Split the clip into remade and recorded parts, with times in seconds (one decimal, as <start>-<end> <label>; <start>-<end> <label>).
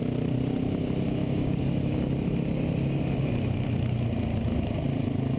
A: 0.0-1.2 recorded; 1.2-2.1 remade; 2.1-5.4 recorded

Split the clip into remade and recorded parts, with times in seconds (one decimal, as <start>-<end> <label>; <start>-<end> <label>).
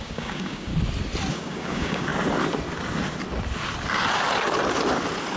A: 0.0-0.7 remade; 0.7-1.3 recorded; 1.3-2.1 remade; 2.1-5.4 recorded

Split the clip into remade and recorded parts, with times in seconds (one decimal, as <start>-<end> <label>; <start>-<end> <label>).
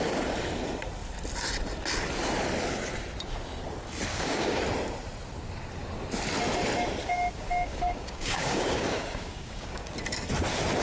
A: 0.0-4.1 recorded; 4.1-4.6 remade; 4.6-7.0 recorded; 7.0-9.9 remade; 9.9-10.8 recorded